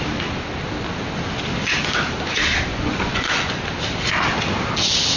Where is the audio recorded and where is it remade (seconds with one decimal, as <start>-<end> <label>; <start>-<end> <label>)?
0.0-2.7 recorded; 2.7-3.6 remade; 3.6-5.2 recorded